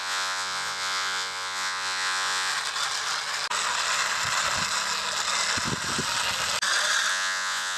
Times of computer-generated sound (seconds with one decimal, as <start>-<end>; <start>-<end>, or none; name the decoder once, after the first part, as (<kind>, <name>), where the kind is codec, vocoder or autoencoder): 0.0-2.5 (vocoder, Vocos); 7.1-7.8